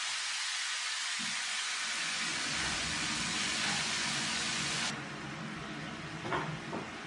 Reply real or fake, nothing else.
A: fake